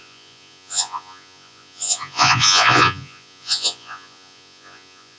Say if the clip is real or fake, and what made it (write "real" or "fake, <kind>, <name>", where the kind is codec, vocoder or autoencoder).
fake, vocoder, Vocos